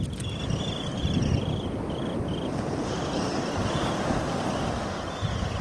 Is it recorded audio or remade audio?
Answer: recorded